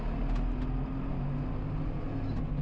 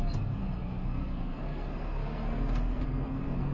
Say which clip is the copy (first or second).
second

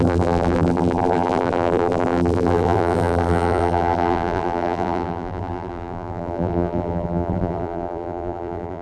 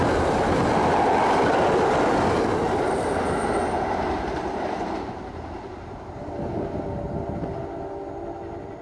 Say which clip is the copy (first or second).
first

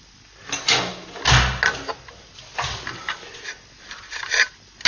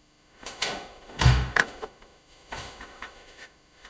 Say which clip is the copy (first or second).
second